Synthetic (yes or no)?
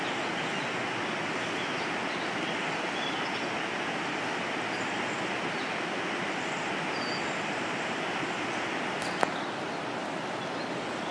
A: no